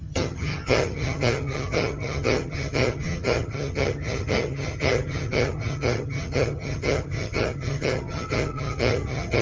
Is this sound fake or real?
fake